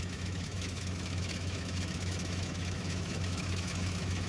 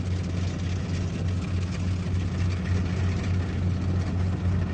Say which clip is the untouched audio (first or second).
second